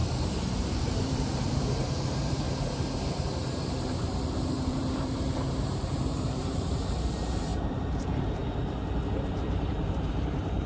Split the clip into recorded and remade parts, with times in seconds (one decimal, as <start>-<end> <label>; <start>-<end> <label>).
0.0-0.7 recorded; 0.7-8.4 remade; 8.4-9.5 recorded; 9.5-10.7 remade